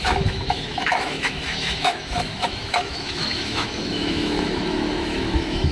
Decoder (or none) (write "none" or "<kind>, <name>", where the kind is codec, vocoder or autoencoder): autoencoder, DAC-VAE